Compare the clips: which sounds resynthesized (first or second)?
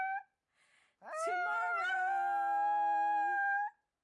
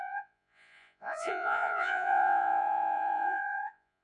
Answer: second